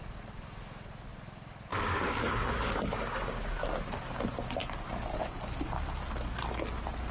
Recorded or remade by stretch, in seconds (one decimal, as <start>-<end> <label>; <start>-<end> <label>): 0.0-1.7 recorded; 1.7-3.6 remade; 3.6-7.1 recorded